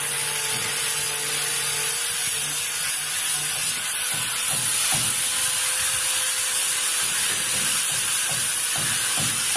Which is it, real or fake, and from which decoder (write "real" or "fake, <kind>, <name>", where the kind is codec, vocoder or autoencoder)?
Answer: real